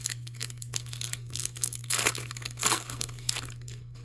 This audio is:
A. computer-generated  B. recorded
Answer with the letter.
A